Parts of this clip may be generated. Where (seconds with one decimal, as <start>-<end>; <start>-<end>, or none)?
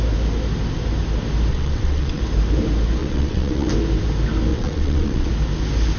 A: 1.5-2.2; 3.0-3.7; 4.5-5.3